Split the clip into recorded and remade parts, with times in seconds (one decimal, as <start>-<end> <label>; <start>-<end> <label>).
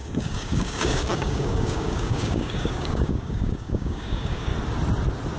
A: 0.0-4.5 remade; 4.5-5.4 recorded